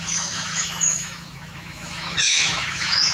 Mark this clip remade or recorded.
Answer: remade